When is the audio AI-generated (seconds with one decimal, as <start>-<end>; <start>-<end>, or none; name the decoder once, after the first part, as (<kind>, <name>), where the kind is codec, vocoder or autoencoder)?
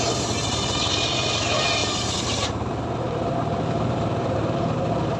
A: 1.8-5.2 (vocoder, BigVGAN v2)